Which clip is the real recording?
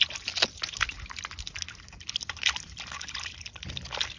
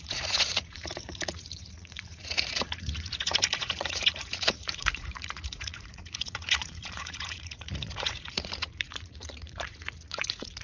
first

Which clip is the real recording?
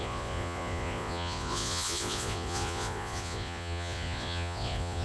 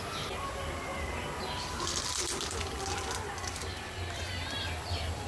second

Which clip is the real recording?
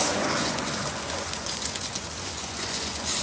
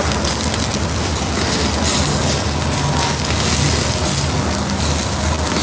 second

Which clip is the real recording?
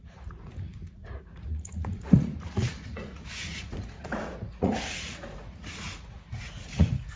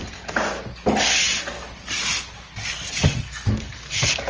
second